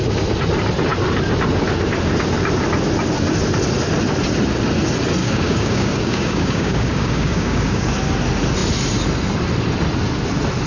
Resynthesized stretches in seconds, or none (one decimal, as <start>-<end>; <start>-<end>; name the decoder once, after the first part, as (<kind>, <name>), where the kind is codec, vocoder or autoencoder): 5.2-7.9 (codec, DAC)